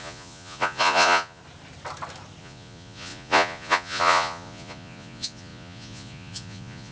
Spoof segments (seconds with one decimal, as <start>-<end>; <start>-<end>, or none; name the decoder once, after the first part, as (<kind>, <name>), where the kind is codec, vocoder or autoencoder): 0.0-1.4 (vocoder, Vocos); 2.4-6.9